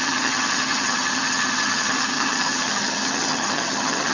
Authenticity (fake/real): fake